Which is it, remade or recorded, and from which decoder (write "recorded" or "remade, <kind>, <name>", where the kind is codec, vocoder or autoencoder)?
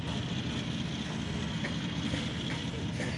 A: recorded